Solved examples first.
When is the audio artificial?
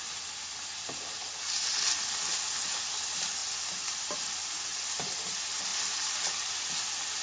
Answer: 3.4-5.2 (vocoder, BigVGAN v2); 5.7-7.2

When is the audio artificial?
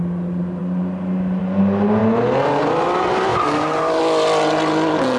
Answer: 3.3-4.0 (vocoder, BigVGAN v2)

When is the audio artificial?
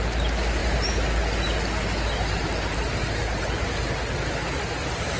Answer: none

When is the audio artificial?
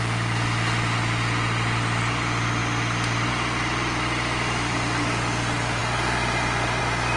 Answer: none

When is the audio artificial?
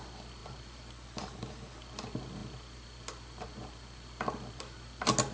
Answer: none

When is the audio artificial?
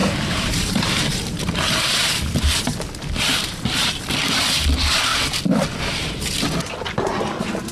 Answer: 0.0-4.0 (vocoder, BigVGAN v2)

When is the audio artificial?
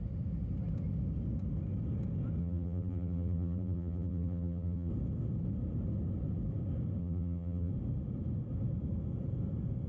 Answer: 2.4-4.9 (vocoder, BigVGAN v2); 7.0-7.7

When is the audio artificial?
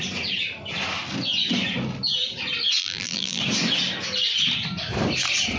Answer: 2.8-3.4 (vocoder, BigVGAN v2)